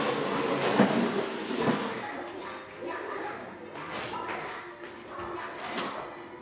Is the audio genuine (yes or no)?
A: yes